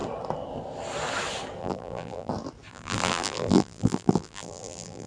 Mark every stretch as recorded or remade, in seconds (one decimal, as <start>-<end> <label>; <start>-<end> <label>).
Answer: 0.0-1.6 recorded; 1.6-2.3 remade; 2.3-2.7 recorded; 2.7-5.1 remade